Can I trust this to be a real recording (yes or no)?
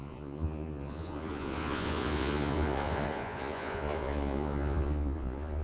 no